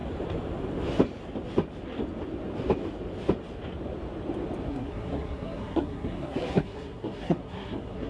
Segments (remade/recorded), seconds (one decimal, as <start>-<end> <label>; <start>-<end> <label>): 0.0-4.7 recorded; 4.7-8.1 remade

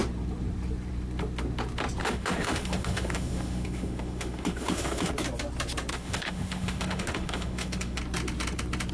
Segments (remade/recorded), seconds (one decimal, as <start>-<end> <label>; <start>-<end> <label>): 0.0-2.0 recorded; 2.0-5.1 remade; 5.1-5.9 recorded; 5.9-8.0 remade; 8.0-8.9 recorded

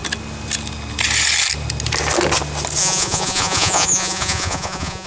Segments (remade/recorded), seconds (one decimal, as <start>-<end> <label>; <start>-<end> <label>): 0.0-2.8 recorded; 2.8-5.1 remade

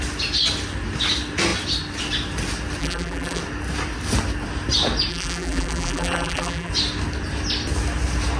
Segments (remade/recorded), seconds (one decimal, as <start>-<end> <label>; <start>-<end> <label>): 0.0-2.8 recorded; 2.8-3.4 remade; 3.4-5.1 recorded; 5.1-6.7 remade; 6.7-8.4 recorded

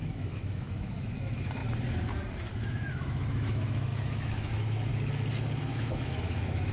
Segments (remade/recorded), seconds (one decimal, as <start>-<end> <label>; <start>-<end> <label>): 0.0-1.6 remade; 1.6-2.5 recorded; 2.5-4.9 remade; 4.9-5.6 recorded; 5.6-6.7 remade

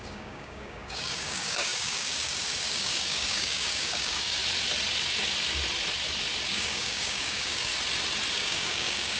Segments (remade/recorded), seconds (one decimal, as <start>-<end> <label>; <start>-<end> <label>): 0.0-4.4 remade; 4.4-6.5 recorded; 6.5-7.7 remade; 7.7-8.3 recorded; 8.3-9.2 remade